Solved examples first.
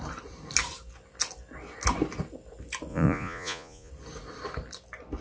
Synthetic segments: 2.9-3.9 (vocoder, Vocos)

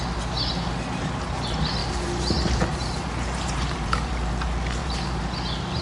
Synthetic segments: 1.8-4.3 (vocoder, BigVGAN v2); 4.8-5.3